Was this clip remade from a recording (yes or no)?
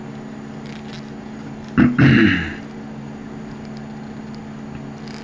no